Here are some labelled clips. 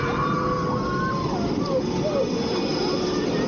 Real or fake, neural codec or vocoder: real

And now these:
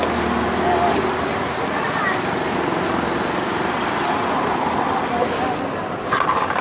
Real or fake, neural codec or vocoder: real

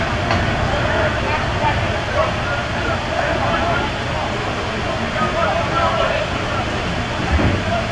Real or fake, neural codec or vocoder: real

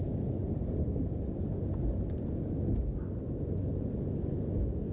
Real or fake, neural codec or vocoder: real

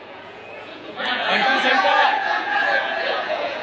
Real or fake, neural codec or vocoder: fake, vocoder, Vocos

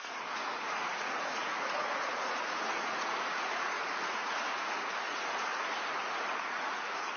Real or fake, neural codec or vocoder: fake, vocoder, Vocos